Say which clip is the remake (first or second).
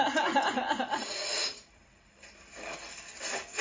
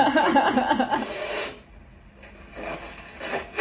first